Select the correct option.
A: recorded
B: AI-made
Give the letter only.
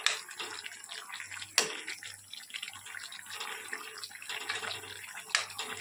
A